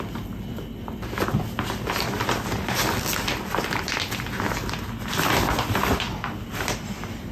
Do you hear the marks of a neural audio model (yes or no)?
no